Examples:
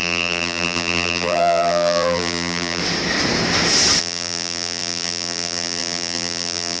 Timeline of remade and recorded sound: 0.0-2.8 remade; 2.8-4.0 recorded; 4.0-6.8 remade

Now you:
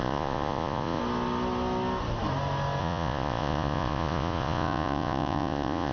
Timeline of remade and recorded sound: 0.0-1.0 remade; 1.0-2.8 recorded; 2.8-5.9 remade

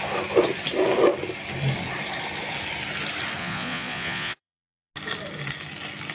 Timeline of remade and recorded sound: 0.0-3.4 recorded; 3.4-4.9 remade; 4.9-6.1 recorded

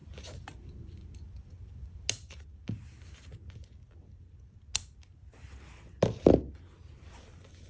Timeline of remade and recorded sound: 0.0-7.7 recorded

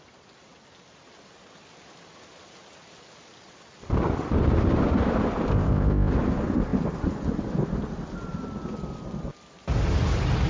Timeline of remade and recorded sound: 0.0-5.5 recorded; 5.5-6.1 remade; 6.1-10.5 recorded

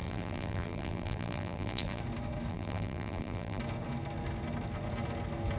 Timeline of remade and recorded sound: 0.0-2.0 remade; 2.0-2.5 recorded; 2.5-3.6 remade; 3.6-5.6 recorded

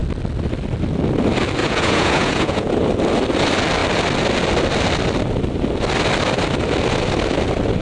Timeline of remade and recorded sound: 0.0-1.6 recorded; 1.6-2.7 remade; 2.7-7.8 recorded